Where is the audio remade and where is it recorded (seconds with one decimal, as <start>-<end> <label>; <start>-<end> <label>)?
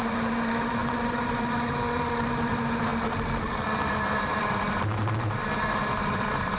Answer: 0.0-2.9 remade; 2.9-3.9 recorded; 3.9-6.6 remade